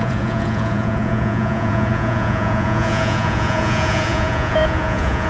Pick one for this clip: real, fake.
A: fake